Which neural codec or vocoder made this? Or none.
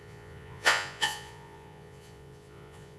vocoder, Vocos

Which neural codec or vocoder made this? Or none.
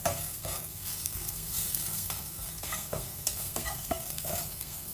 codec, SNAC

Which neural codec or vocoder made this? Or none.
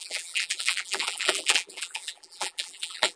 vocoder, BigVGAN v2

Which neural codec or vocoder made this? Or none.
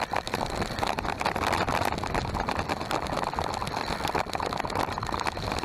vocoder, BigVGAN v2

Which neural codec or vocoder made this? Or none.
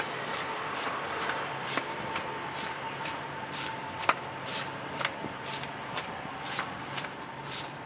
vocoder, BigVGAN v2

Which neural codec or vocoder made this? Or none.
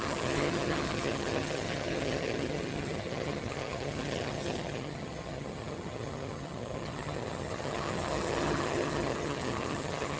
vocoder, HiFi-GAN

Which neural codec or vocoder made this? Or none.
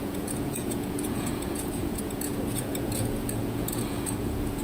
vocoder, Vocos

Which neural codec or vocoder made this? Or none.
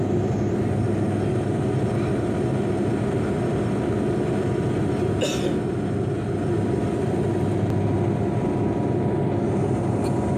none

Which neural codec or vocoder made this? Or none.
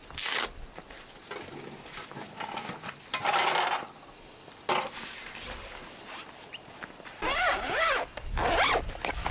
none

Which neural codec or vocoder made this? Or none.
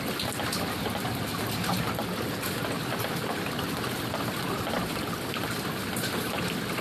none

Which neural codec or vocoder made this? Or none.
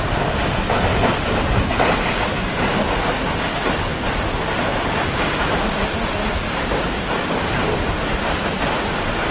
none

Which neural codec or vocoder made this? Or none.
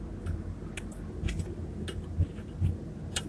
none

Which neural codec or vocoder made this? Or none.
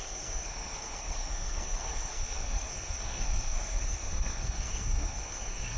codec, SNAC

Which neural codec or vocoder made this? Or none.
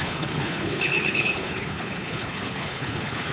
codec, HILCodec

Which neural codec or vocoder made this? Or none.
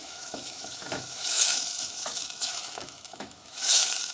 autoencoder, DAC-VAE